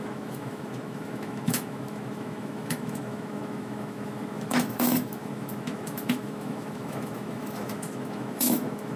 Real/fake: fake